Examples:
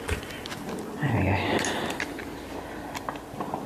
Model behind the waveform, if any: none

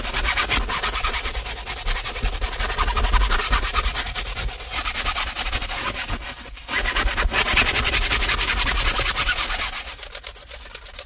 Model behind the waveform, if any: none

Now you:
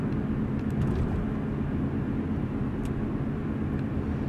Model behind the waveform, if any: none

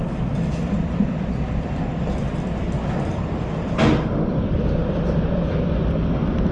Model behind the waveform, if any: vocoder, BigVGAN v2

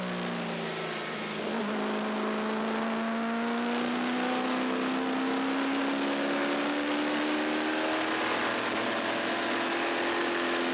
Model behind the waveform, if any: none